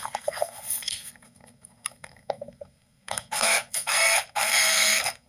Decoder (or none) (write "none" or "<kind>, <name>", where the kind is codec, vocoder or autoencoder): codec, SNAC